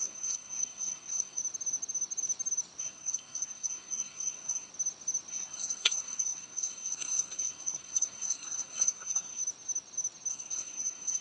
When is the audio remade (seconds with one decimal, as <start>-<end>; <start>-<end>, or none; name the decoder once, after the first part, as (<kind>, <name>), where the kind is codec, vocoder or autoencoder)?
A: 0.0-1.4 (codec, SNAC); 2.8-4.7; 5.3-9.4; 10.3-11.2